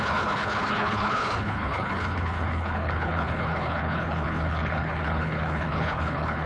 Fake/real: fake